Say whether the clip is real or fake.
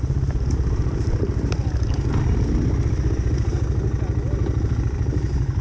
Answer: real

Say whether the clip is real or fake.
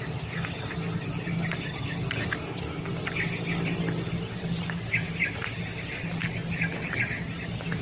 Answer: real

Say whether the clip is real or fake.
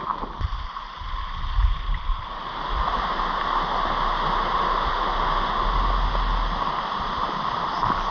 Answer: real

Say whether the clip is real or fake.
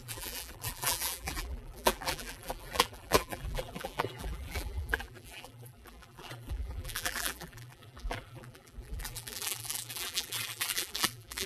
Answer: fake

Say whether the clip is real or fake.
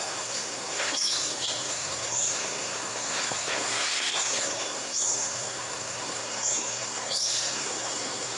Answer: fake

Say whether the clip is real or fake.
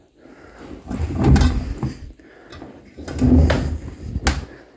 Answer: real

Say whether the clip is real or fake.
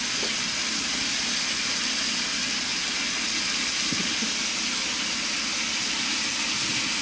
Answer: real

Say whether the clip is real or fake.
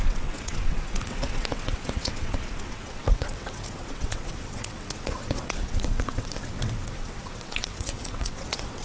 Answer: fake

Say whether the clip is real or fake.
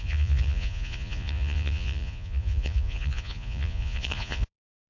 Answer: fake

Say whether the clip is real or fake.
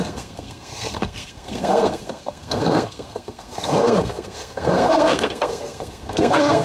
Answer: fake